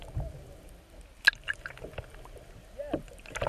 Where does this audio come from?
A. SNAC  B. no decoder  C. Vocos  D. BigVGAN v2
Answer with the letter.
B